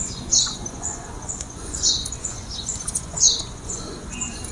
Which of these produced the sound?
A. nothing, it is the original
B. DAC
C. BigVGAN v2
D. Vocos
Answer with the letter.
D